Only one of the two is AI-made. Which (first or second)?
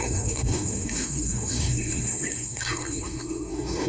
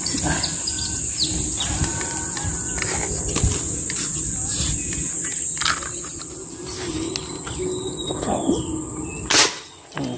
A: first